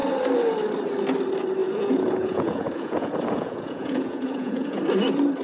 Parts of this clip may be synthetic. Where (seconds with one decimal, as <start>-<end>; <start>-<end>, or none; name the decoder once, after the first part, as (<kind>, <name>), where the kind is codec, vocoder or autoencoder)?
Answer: 1.6-4.8 (vocoder, Vocos)